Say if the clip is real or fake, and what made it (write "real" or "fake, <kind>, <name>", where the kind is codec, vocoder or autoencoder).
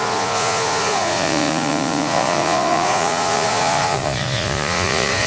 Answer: fake, vocoder, Vocos